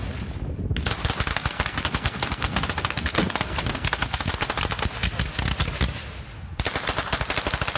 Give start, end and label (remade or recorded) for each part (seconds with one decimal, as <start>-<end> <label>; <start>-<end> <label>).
0.0-1.3 recorded; 1.3-4.3 remade; 4.3-7.8 recorded